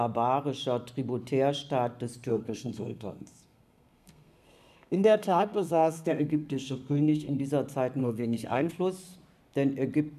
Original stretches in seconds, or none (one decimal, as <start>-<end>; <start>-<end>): 0.0-2.3; 7.4-8.0; 8.7-10.2